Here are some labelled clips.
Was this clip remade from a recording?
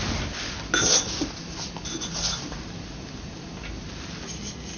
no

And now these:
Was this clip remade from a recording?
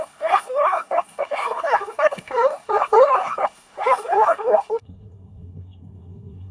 yes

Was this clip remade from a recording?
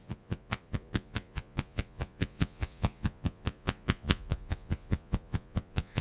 yes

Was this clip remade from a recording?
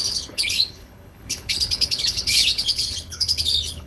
yes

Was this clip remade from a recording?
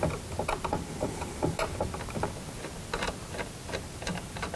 no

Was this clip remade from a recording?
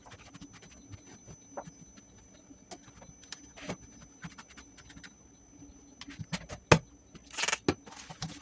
no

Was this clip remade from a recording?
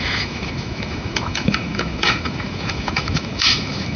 yes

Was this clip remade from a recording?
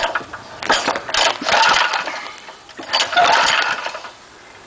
no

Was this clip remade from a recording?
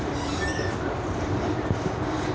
no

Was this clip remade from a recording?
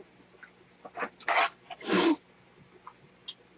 no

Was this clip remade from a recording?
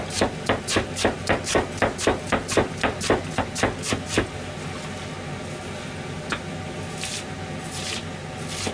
no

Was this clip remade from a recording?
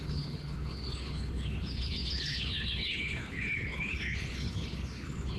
yes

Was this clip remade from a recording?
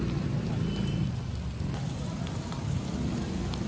no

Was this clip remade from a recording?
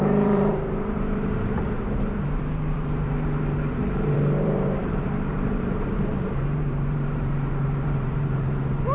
yes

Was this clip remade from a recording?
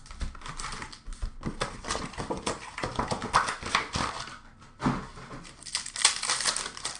no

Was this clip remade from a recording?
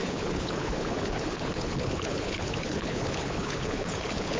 yes